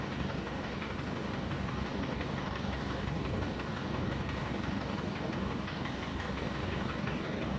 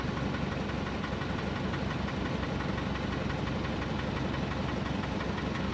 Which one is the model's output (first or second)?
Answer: first